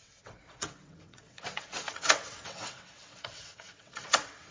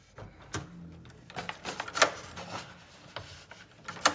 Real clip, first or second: second